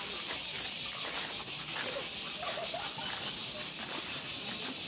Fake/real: real